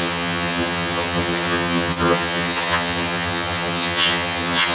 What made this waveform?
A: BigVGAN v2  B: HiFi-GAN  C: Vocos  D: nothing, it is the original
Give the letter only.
B